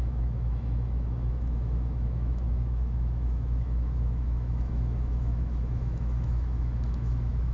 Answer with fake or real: fake